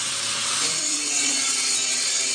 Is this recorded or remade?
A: remade